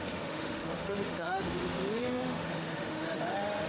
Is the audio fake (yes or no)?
yes